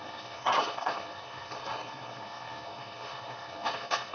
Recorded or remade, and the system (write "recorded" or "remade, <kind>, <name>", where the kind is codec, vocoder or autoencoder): remade, codec, SNAC